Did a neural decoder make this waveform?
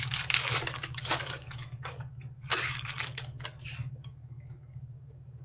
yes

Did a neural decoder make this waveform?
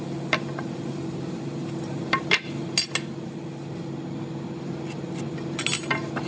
no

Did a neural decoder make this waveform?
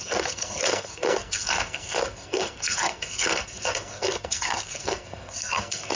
yes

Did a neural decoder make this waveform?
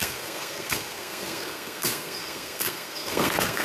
yes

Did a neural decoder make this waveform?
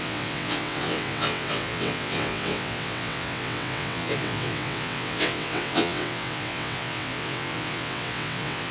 yes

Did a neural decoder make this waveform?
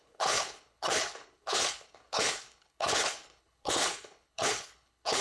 yes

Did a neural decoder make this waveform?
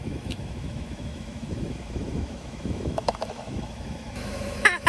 yes